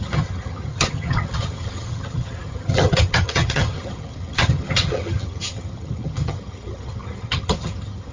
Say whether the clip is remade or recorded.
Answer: remade